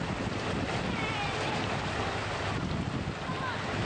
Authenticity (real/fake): real